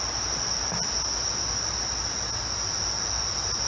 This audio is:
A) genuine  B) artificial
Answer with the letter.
A